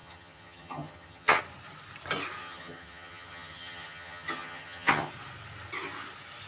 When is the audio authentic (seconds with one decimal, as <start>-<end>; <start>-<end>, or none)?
1.4-2.4; 5.1-6.5